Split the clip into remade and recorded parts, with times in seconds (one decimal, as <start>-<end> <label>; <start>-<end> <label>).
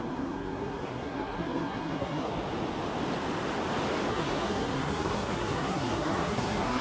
0.0-2.3 remade; 2.3-4.1 recorded; 4.1-6.8 remade